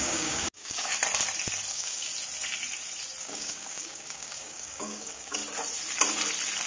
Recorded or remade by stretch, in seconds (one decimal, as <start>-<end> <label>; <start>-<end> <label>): 0.0-0.9 remade; 0.9-1.7 recorded; 1.7-2.1 remade; 2.1-3.2 recorded; 3.2-5.4 remade; 5.4-6.7 recorded